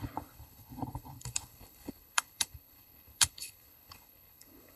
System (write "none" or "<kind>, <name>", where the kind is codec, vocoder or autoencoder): codec, HILCodec